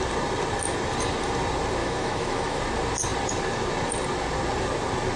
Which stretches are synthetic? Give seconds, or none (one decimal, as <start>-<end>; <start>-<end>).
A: 1.8-2.6